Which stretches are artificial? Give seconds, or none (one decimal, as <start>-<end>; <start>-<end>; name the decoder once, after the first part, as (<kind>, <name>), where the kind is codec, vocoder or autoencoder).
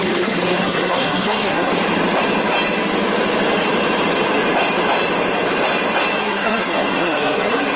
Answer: 0.0-1.7 (codec, SNAC); 6.2-7.8